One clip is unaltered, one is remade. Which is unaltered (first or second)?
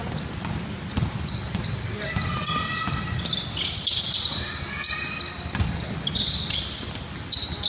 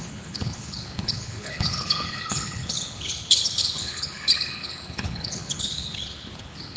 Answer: first